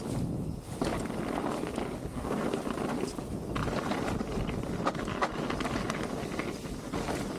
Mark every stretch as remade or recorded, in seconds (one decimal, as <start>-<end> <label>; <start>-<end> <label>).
0.0-2.1 recorded; 2.1-2.6 remade; 2.6-7.4 recorded